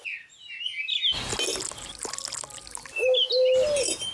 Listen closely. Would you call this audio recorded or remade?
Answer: recorded